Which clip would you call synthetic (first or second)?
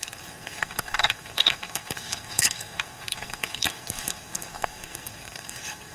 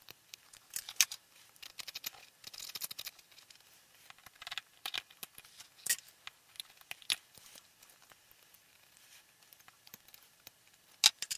first